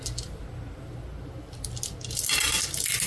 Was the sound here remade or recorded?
recorded